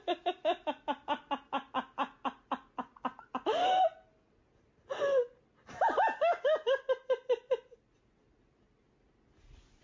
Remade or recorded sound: recorded